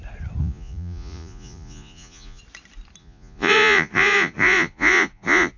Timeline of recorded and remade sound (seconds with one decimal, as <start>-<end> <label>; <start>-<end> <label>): 0.0-0.4 recorded; 0.4-2.4 remade; 2.4-3.0 recorded; 3.0-5.6 remade